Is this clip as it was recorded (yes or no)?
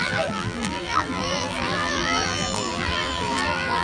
no